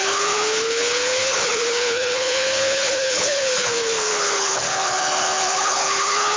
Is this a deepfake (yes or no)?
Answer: yes